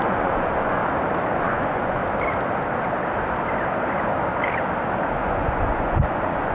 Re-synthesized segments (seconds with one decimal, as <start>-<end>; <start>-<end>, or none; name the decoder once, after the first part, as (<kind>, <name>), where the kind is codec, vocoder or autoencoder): 0.0-0.8 (vocoder, Vocos); 1.4-2.0; 5.1-6.5